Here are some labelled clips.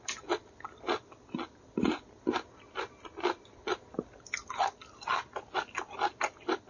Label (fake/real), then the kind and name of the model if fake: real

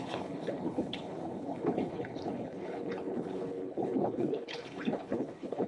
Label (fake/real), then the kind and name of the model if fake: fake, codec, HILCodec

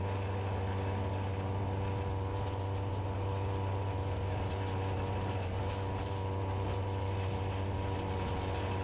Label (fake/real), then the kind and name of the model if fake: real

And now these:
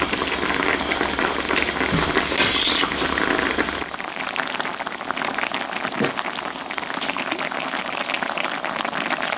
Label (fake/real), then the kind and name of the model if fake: real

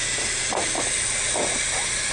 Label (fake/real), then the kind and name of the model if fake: real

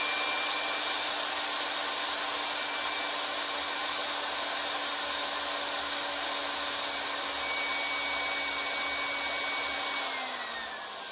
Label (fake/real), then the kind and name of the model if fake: real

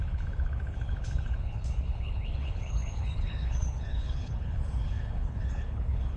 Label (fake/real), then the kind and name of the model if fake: fake, codec, HILCodec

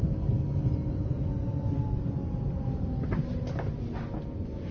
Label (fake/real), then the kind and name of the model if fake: real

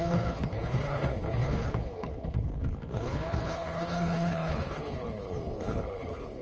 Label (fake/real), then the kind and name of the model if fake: fake, codec, HILCodec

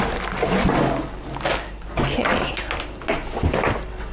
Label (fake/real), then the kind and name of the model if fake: real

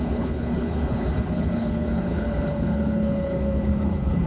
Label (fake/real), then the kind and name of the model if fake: fake, codec, HILCodec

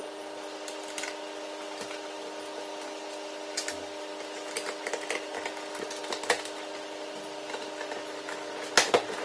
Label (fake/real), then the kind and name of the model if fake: real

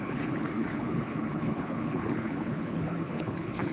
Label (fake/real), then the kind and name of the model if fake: fake, codec, HILCodec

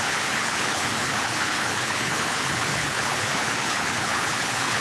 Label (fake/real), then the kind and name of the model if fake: fake, codec, HILCodec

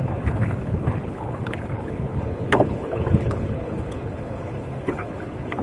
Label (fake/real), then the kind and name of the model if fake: fake, codec, HILCodec